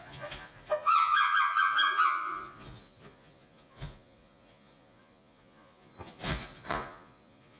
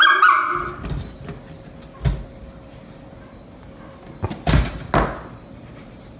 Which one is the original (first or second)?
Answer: second